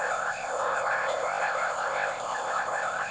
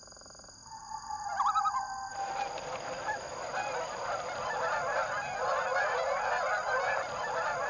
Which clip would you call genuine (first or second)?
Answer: second